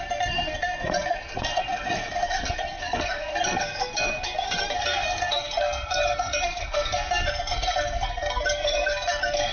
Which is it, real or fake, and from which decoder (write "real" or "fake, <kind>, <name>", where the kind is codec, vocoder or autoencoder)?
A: fake, codec, SNAC